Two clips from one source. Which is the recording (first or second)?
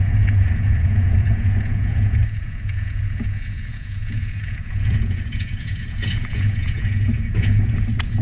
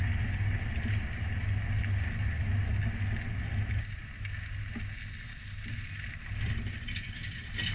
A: second